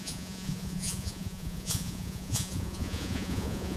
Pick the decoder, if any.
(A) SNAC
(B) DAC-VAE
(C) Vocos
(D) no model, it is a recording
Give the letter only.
C